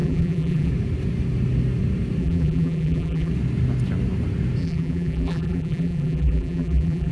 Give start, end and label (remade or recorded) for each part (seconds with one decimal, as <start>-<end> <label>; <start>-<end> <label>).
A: 0.0-0.7 remade; 0.7-2.2 recorded; 2.2-3.3 remade; 3.3-4.6 recorded; 4.6-7.1 remade